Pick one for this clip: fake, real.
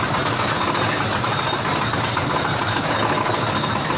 real